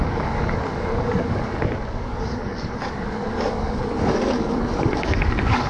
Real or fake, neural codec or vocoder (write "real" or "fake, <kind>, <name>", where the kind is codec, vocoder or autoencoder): fake, codec, DAC